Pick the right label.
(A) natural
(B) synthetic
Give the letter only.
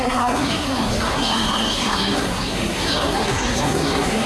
B